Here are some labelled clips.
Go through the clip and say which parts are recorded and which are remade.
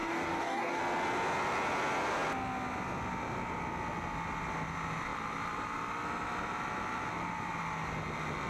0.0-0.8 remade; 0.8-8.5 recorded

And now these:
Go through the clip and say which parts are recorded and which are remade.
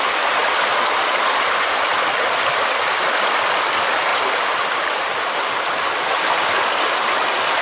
0.0-4.1 recorded; 4.1-5.3 remade; 5.3-7.6 recorded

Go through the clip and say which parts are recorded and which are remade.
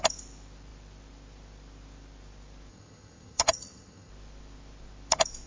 0.0-2.7 recorded; 2.7-4.1 remade; 4.1-5.5 recorded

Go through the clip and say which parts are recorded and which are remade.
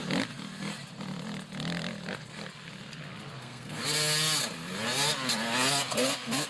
0.0-3.4 recorded; 3.4-3.8 remade; 3.8-5.9 recorded; 5.9-6.5 remade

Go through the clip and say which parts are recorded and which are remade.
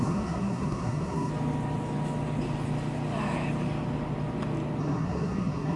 0.0-1.3 remade; 1.3-4.8 recorded; 4.8-5.8 remade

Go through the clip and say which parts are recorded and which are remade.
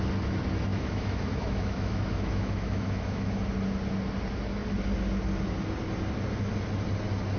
0.0-0.7 recorded; 0.7-3.4 remade; 3.4-7.4 recorded